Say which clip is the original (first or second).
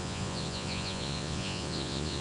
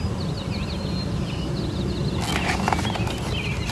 second